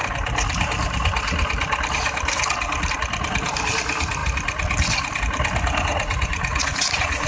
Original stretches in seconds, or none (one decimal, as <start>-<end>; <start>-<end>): 0.0-5.9